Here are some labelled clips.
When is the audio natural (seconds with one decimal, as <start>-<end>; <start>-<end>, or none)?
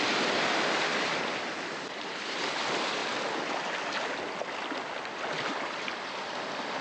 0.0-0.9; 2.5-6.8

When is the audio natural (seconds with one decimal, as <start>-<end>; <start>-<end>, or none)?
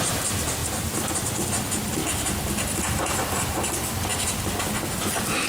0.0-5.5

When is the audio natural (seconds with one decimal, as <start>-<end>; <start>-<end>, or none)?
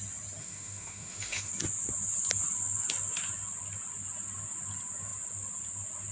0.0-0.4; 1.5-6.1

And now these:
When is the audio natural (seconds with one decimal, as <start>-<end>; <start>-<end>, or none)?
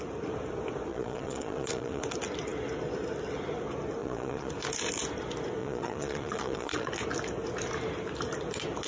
0.0-0.9; 2.0-4.0; 4.5-5.6; 6.9-8.9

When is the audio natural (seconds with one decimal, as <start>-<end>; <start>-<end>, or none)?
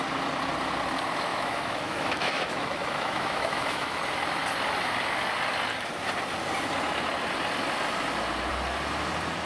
0.0-1.3; 4.0-9.5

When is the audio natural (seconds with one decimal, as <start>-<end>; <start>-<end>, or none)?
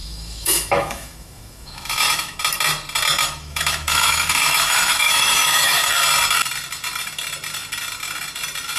2.4-3.2; 5.9-8.8